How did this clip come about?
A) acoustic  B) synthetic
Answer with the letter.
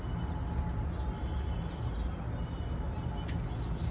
A